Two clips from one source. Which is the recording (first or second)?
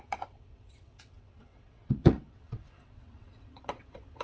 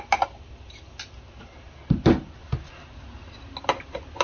second